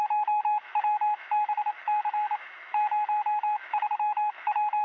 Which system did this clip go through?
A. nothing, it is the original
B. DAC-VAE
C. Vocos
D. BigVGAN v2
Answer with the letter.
B